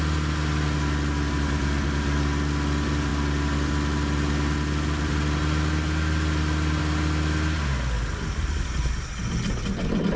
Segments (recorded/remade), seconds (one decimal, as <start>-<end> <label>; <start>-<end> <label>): 0.0-10.2 recorded